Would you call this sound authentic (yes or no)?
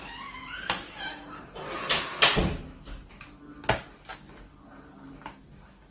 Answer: yes